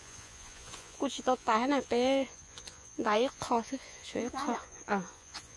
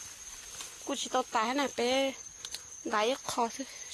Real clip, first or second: second